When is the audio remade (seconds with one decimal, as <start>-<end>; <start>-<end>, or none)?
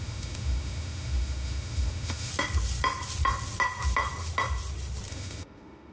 0.0-2.3; 5.1-5.9